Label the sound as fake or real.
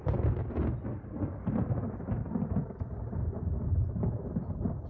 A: real